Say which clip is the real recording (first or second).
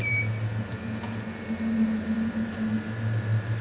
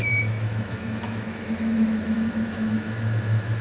first